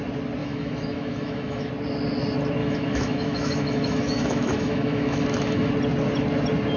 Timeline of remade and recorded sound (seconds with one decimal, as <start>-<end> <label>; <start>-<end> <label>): 0.0-0.4 recorded; 0.4-1.7 remade; 1.7-2.6 recorded; 2.6-5.7 remade; 5.7-6.8 recorded

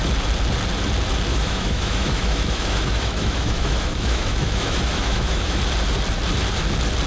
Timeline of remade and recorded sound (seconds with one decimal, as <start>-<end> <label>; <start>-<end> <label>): 0.0-1.3 recorded; 1.3-5.6 remade; 5.6-7.1 recorded

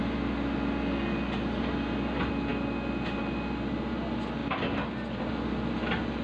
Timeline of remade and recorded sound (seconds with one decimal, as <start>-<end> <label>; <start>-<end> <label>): 0.0-6.2 recorded

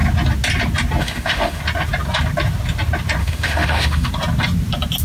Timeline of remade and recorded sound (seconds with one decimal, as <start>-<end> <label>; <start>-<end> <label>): 0.0-1.0 recorded; 1.0-1.6 remade; 1.6-3.2 recorded; 3.2-4.1 remade; 4.1-5.0 recorded